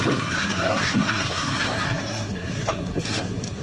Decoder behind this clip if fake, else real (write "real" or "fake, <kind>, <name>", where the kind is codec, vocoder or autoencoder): fake, codec, SNAC